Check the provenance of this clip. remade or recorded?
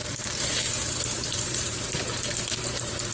remade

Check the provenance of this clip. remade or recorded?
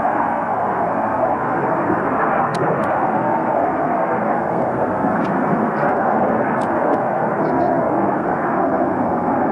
remade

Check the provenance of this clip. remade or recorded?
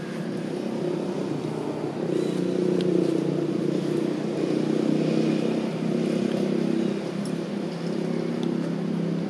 recorded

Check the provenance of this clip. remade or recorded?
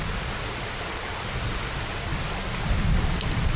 recorded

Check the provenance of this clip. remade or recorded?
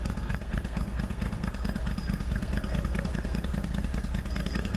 remade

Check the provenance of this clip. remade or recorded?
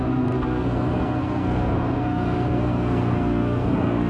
remade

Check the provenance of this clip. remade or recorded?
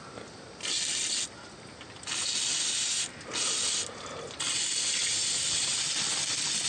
recorded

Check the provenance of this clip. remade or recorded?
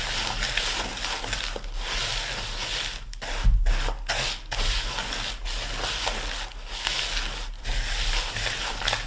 recorded